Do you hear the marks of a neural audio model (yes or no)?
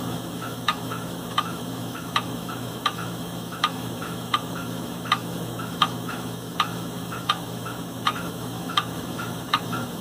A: yes